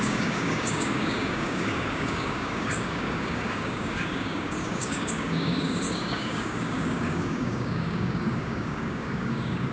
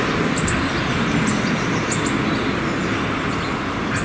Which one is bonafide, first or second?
second